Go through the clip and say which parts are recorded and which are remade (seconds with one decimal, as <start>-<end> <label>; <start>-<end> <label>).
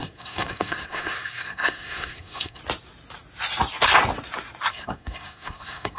0.0-2.6 remade; 2.6-4.7 recorded; 4.7-6.0 remade